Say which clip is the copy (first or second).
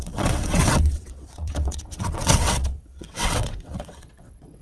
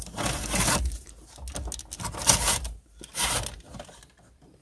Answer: first